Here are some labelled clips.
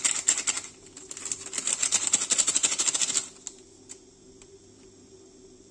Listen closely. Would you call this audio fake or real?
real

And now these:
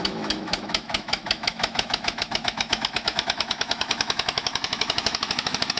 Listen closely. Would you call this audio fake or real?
fake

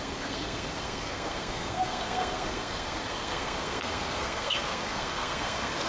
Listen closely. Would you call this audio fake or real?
fake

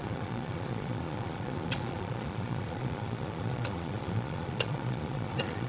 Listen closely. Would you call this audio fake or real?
fake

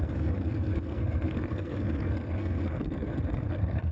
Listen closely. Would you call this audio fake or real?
fake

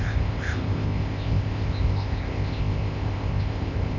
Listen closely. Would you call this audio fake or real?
fake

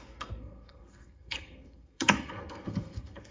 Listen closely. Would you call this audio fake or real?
fake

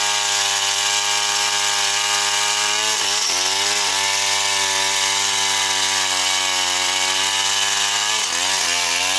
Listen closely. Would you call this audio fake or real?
real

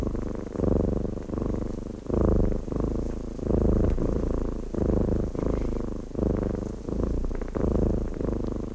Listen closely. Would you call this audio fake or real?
real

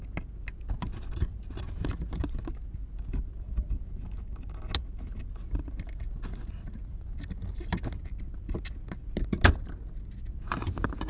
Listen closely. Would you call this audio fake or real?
real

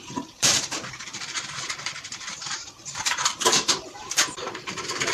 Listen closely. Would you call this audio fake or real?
fake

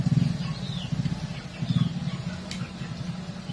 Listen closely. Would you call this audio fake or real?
real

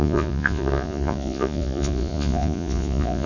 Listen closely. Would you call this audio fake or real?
fake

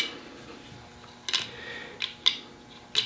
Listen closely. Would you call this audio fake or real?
real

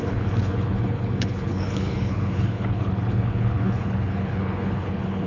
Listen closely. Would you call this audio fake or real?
fake